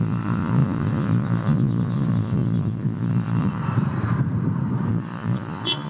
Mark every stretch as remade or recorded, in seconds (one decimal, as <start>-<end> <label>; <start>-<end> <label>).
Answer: 0.0-3.6 remade; 3.6-4.9 recorded; 4.9-5.9 remade